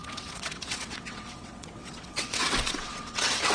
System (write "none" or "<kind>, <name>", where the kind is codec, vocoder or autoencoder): vocoder, WaveNeXt